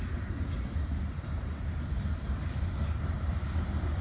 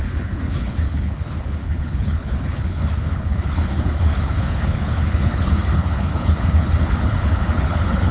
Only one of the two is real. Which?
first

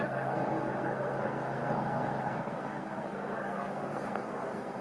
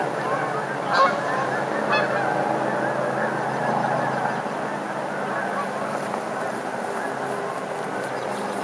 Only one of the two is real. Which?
second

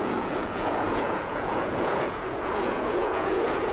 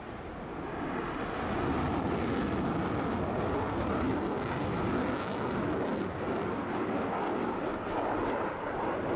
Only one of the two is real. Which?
second